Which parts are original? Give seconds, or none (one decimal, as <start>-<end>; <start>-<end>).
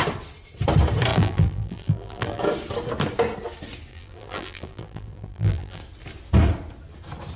0.0-1.1; 2.4-3.9; 5.8-7.4